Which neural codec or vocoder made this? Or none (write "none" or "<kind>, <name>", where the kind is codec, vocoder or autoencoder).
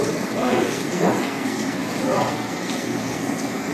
codec, SNAC